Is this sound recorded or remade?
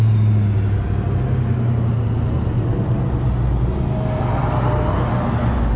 recorded